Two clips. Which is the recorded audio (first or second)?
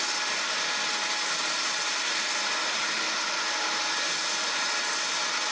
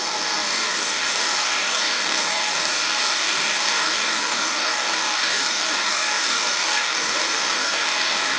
first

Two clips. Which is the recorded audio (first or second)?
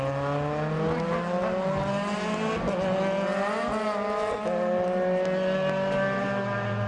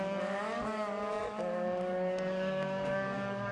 first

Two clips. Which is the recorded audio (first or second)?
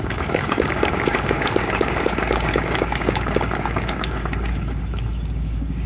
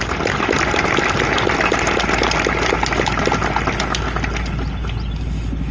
second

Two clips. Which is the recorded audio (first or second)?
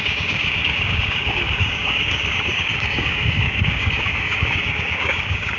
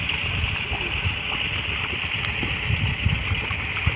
second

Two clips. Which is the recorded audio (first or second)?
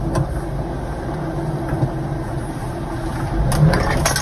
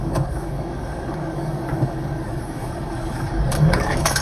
first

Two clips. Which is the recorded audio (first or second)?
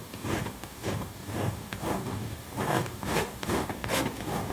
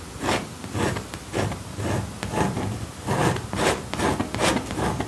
second